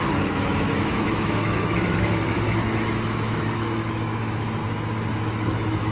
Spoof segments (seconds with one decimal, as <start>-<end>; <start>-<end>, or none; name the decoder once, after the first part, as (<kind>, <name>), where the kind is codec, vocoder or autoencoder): 0.0-4.6 (autoencoder, DAC-VAE); 5.1-5.9